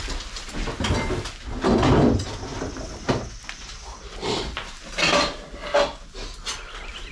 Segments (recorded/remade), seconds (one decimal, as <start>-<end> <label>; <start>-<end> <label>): 0.0-7.1 recorded